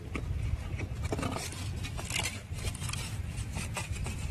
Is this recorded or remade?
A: recorded